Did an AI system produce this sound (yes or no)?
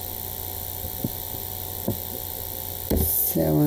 no